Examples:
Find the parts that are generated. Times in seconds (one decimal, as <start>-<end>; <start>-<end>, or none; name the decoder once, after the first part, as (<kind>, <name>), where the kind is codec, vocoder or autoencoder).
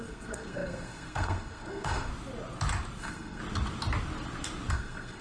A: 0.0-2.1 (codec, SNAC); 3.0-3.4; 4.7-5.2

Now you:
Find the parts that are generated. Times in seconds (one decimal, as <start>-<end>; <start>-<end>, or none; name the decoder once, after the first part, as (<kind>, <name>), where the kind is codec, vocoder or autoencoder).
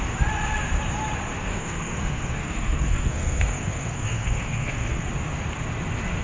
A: 1.4-5.1 (codec, SNAC)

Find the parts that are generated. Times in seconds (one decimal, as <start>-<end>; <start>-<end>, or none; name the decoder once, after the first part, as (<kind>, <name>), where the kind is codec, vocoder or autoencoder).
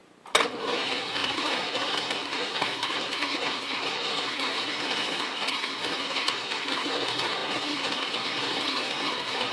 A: 0.6-9.5 (codec, SNAC)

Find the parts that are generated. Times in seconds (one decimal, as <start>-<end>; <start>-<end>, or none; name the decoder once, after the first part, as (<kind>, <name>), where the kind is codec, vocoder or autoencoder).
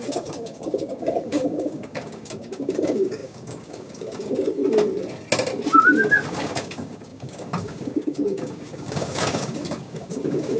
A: 0.0-4.6 (codec, DAC); 6.3-10.6